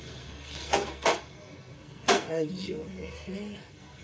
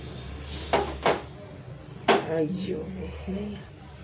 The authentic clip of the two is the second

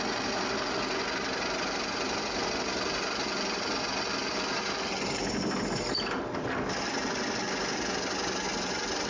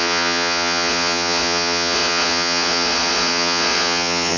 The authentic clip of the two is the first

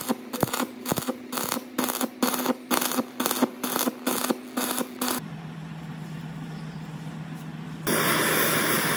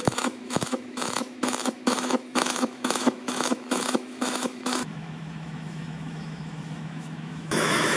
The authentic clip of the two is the first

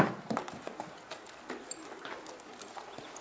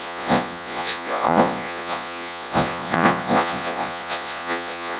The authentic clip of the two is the first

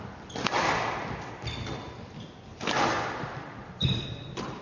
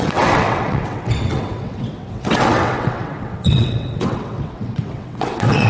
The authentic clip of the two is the first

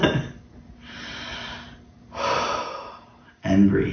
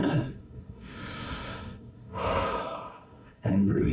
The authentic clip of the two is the first